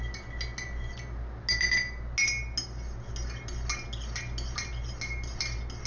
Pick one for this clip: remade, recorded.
recorded